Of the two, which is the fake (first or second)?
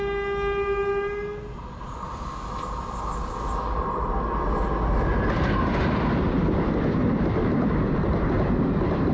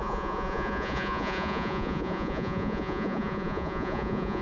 second